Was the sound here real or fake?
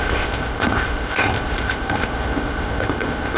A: fake